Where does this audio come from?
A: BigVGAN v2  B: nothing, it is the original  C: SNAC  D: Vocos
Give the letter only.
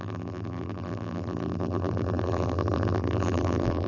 A